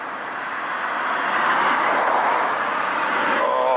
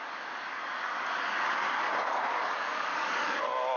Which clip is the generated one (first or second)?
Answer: second